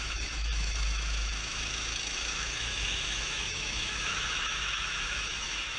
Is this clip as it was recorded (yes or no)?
no